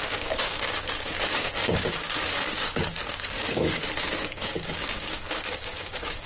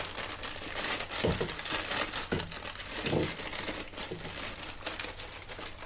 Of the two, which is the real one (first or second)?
second